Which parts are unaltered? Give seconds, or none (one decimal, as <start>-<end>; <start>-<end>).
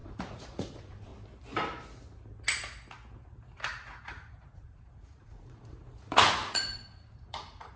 1.1-4.0